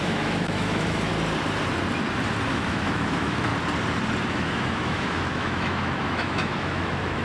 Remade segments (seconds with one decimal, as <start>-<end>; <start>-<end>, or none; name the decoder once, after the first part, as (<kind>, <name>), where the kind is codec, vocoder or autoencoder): 0.0-1.1 (autoencoder, DAC-VAE); 2.5-3.5; 4.3-7.2